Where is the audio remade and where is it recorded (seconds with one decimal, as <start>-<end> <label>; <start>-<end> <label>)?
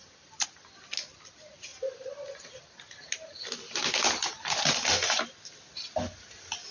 0.0-6.7 recorded